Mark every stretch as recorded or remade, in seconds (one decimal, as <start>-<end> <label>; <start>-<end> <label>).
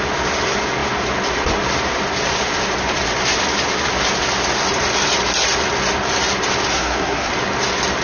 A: 0.0-6.7 recorded; 6.7-7.3 remade; 7.3-8.0 recorded